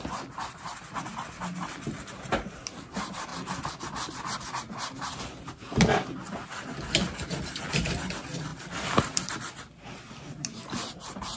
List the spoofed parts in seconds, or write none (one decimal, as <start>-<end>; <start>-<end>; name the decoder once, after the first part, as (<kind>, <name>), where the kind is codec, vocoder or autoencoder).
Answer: 8.5-9.3 (vocoder, BigVGAN v2)